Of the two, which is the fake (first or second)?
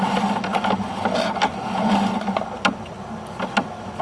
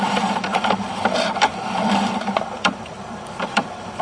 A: second